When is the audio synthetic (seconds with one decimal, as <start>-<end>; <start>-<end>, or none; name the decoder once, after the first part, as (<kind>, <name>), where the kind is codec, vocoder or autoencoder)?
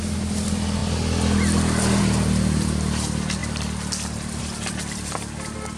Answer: 0.0-0.8 (vocoder, BigVGAN v2); 2.0-5.8